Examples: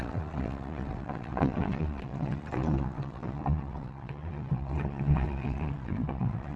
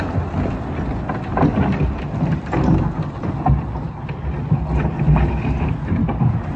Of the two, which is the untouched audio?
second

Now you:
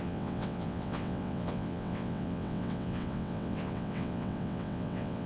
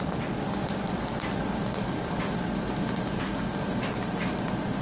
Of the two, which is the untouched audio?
second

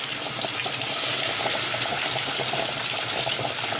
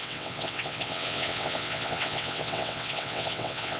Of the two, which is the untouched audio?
first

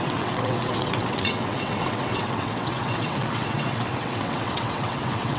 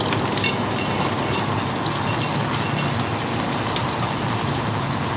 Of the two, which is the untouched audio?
second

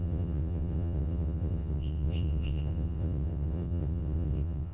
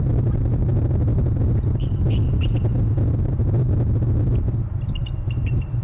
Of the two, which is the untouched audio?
second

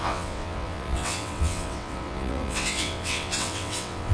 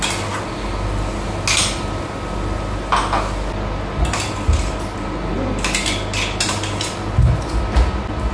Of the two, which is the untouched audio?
second